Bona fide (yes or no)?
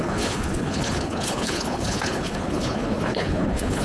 no